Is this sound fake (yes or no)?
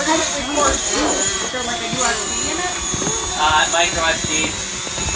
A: no